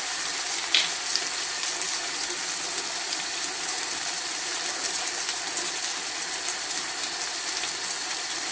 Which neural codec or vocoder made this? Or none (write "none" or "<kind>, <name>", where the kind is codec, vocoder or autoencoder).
none